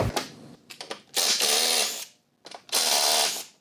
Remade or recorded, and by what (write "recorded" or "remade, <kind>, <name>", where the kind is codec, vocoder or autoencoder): recorded